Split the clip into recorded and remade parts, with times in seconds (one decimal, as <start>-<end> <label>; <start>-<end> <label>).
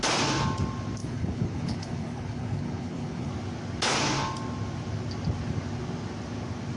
0.0-1.0 recorded; 1.0-3.3 remade; 3.3-6.8 recorded